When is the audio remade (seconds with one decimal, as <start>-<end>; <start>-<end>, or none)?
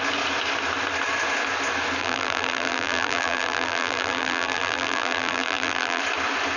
2.0-6.0